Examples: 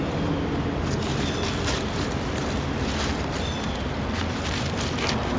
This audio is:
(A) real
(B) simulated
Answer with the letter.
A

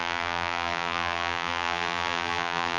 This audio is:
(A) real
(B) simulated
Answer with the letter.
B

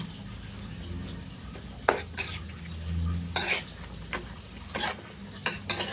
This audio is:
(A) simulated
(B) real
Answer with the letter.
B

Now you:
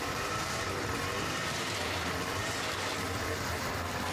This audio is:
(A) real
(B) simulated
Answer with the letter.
B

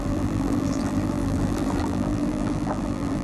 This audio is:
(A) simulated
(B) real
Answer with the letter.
A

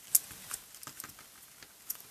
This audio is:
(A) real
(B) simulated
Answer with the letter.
A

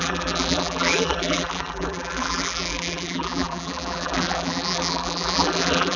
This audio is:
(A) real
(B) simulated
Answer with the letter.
B